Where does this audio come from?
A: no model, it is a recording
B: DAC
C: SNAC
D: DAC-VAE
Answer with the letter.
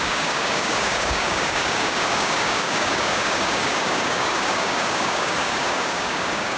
B